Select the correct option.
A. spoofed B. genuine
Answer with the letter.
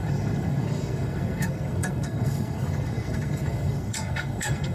A